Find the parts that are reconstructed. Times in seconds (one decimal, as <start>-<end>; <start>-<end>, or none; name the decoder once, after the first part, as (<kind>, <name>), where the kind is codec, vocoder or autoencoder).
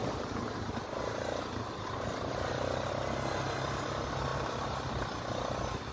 0.0-2.9 (vocoder, BigVGAN v2); 4.3-4.9